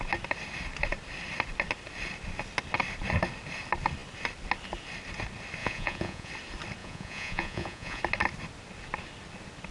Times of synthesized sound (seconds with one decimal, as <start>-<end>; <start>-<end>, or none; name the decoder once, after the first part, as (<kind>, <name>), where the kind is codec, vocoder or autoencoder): 5.6-6.3 (vocoder, Vocos); 6.8-8.0